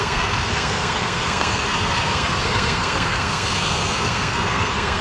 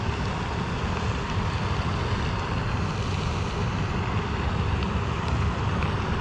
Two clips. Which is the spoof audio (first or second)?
first